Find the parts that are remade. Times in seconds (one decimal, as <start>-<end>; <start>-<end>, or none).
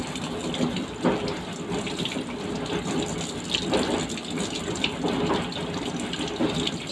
none